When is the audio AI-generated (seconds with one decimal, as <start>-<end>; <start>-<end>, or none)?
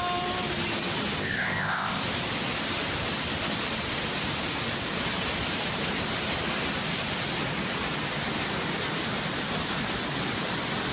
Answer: 1.2-2.0